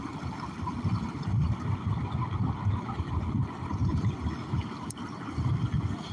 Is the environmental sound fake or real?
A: real